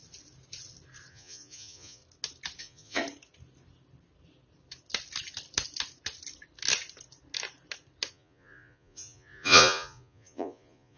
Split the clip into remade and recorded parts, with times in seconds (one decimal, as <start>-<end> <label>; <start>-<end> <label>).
0.0-1.1 recorded; 1.1-2.0 remade; 2.0-2.6 recorded; 2.6-3.0 remade; 3.0-8.1 recorded; 8.1-11.0 remade